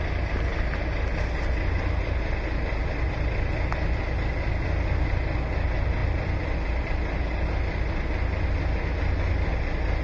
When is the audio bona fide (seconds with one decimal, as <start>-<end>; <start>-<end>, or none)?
0.0-6.0; 7.5-10.0